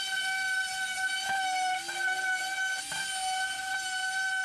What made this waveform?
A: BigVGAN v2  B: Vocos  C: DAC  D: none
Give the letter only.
D